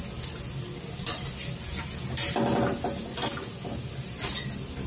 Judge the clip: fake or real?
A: real